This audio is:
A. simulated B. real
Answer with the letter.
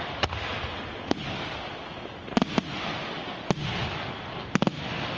B